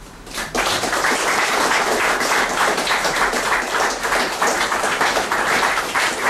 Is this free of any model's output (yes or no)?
no